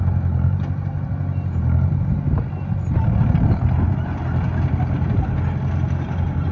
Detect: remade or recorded recorded